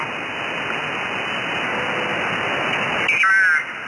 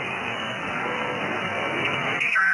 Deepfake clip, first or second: second